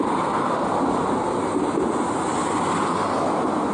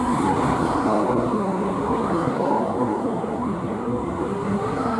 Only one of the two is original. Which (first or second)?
first